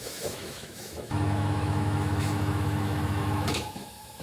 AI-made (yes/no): yes